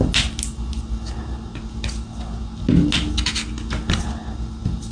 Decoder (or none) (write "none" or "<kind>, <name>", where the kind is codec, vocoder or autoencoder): none